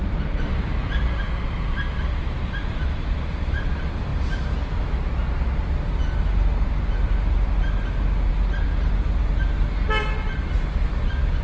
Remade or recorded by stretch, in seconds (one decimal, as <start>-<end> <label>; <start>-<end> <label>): 0.0-11.4 recorded